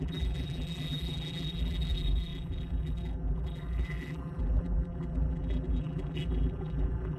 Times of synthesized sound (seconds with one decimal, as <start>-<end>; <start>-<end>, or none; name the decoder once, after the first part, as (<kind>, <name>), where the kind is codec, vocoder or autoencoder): 0.0-7.2 (vocoder, BigVGAN v2)